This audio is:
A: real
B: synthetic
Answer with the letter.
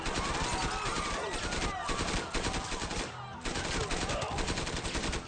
A